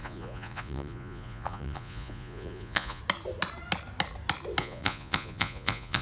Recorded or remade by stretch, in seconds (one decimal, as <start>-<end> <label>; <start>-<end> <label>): 0.0-3.0 remade; 3.0-4.6 recorded; 4.6-6.0 remade